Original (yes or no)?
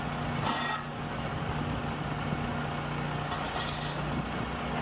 yes